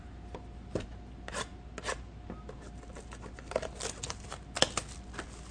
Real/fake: real